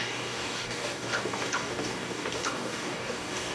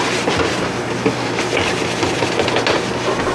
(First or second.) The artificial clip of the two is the first